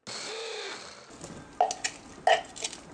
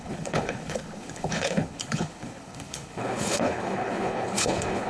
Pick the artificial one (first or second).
second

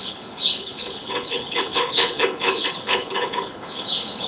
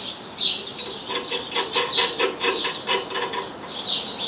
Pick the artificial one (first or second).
first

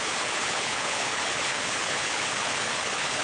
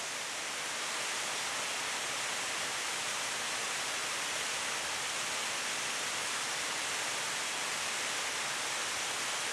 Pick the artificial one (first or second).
first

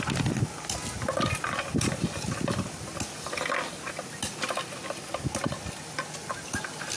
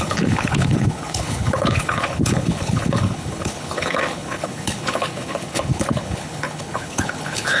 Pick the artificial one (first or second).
second